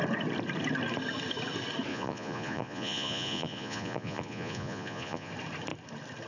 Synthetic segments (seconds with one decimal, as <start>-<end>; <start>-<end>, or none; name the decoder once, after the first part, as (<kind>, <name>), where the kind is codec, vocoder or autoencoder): 1.9-5.3 (vocoder, Vocos)